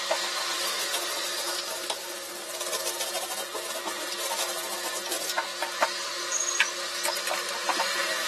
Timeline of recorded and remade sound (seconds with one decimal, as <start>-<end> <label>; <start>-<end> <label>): 0.0-8.3 recorded